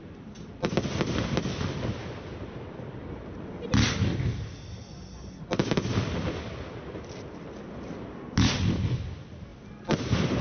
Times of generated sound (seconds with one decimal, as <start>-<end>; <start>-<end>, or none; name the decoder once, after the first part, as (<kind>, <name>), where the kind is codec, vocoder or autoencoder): none